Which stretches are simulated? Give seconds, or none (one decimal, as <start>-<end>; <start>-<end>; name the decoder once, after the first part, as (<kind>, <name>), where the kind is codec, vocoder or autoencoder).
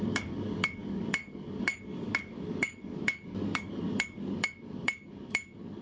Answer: 0.0-5.8 (codec, DAC)